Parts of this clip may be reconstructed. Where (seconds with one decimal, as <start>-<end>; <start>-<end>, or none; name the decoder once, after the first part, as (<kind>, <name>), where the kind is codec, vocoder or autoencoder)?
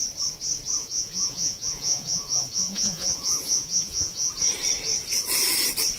0.8-4.3 (vocoder, Vocos)